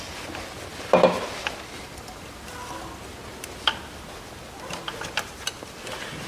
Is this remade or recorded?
recorded